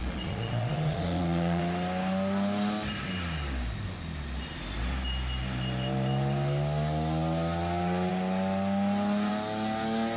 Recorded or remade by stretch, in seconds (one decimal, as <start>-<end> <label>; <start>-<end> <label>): 0.0-1.6 remade; 1.6-10.2 recorded